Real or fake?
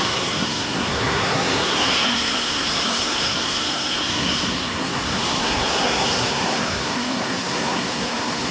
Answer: fake